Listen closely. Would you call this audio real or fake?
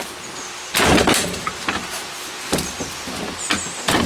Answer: real